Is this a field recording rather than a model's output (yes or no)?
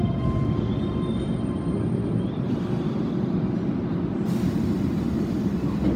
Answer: yes